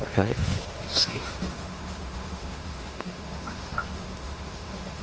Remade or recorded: remade